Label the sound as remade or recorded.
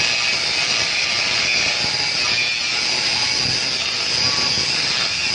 recorded